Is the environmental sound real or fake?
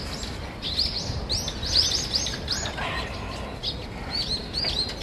real